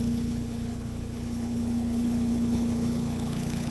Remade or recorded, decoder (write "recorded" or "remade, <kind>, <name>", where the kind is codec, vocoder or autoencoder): remade, codec, HILCodec